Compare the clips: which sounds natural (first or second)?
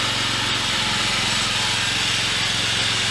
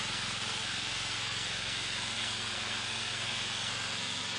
first